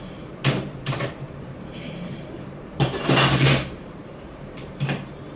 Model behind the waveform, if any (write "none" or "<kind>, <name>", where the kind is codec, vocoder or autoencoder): vocoder, BigVGAN v2